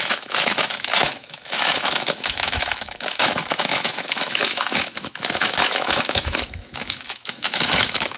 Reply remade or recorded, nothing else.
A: remade